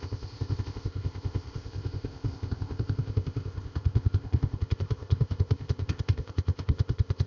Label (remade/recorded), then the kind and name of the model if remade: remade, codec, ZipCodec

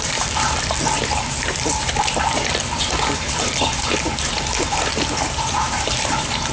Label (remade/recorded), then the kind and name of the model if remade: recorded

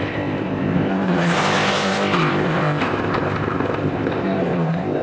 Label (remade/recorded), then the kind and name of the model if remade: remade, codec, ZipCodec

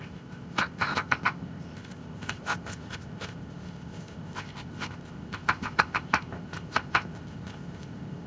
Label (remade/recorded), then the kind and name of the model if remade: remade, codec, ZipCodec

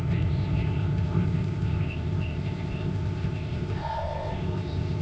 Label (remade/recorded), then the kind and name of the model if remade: remade, codec, ZipCodec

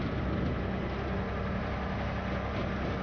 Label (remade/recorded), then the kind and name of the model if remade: recorded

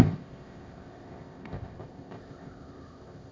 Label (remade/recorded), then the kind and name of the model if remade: remade, codec, ZipCodec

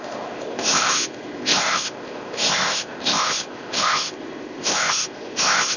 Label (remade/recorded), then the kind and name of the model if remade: remade, codec, ZipCodec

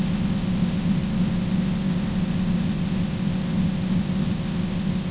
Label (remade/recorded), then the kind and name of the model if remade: remade, codec, ZipCodec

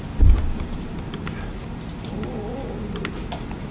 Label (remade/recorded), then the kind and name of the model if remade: recorded